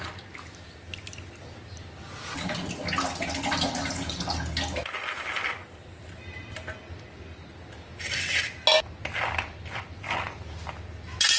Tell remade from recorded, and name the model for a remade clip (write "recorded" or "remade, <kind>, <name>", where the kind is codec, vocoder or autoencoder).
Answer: recorded